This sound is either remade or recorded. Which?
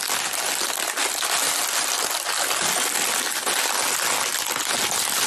recorded